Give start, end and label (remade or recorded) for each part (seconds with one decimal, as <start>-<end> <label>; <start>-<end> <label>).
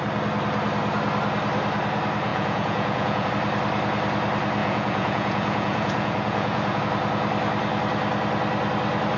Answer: 0.0-2.3 recorded; 2.3-3.3 remade; 3.3-4.6 recorded; 4.6-6.8 remade; 6.8-9.2 recorded